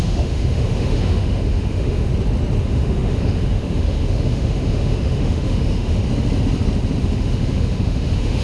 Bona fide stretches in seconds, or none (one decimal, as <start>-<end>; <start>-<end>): 2.1-2.6; 6.0-7.0